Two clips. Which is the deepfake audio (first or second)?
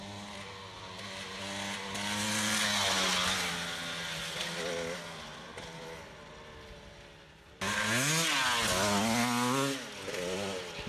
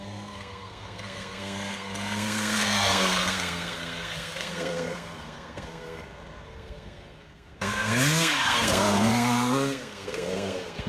second